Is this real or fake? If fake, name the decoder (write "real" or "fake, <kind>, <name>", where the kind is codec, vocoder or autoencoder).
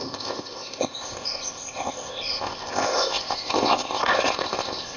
fake, codec, ZipCodec